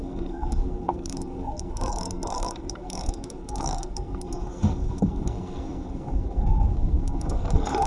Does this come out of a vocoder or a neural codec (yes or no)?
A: yes